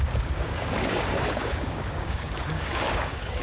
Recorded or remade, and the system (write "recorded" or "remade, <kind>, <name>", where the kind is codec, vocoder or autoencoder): remade, codec, DAC